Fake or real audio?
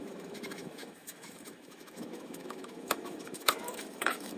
fake